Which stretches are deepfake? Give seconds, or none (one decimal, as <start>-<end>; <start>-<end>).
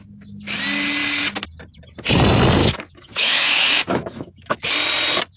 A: 2.6-4.7